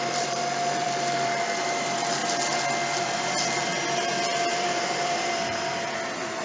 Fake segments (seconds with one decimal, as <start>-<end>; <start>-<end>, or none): 0.0-2.2; 3.0-3.7; 4.5-6.4